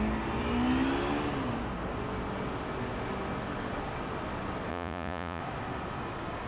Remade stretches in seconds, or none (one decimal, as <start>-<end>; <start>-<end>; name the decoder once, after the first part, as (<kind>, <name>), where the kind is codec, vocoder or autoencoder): 4.7-5.4 (vocoder, Vocos)